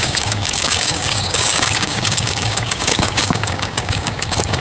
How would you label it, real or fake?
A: fake